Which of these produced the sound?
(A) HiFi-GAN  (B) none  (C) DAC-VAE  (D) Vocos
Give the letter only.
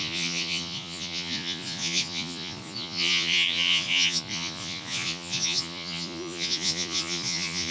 D